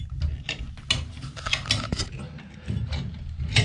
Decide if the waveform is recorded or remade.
recorded